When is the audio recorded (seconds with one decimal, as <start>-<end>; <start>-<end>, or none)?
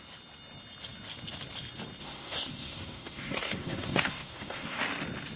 0.0-2.0; 4.8-5.4